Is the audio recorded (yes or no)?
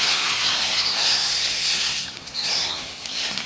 no